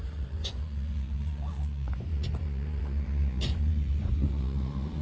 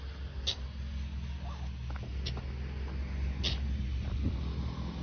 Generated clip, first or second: first